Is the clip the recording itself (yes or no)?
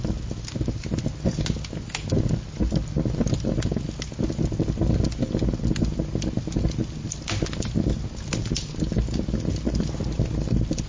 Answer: yes